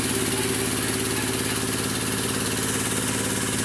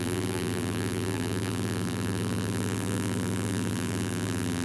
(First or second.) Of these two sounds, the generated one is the second